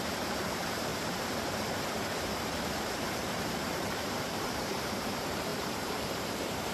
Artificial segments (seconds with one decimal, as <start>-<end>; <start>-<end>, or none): 0.0-6.7